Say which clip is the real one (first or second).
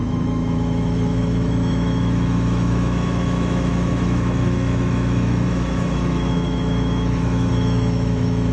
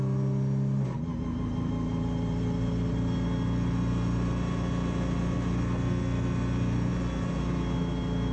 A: second